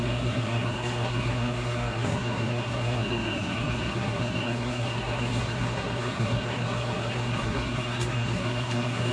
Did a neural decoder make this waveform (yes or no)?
yes